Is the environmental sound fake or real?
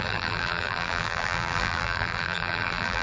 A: fake